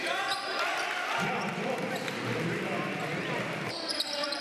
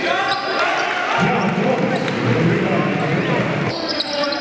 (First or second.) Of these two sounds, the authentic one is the second